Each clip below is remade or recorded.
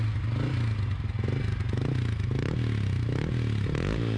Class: recorded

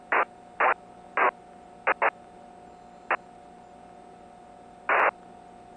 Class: recorded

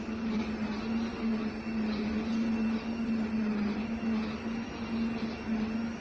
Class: recorded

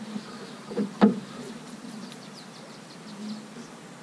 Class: recorded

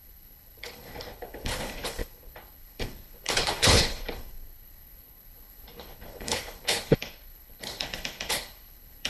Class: remade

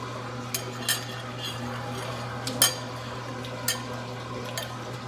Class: recorded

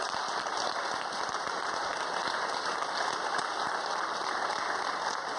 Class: recorded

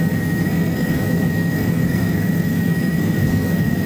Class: remade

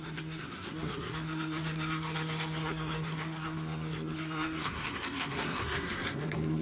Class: remade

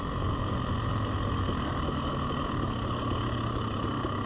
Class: recorded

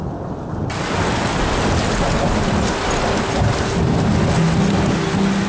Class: recorded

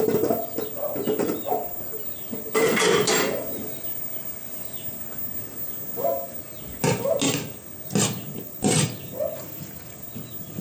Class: recorded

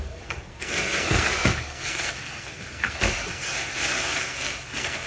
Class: remade